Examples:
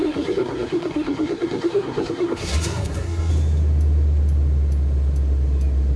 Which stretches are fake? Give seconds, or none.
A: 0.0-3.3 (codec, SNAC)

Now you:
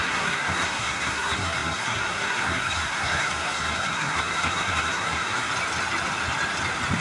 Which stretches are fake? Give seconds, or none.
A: 0.0-5.5 (codec, SNAC)

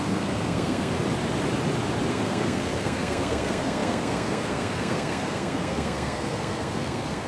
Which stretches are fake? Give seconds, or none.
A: 0.0-0.9 (codec, SNAC); 2.1-7.3

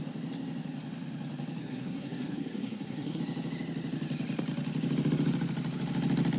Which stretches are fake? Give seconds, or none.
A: 1.6-3.2 (codec, SNAC)

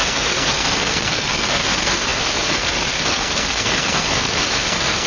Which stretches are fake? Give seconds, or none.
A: 0.0-5.1 (codec, SNAC)